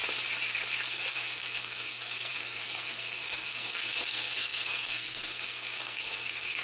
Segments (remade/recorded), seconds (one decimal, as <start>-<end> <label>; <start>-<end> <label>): 0.0-0.9 recorded; 0.9-6.6 remade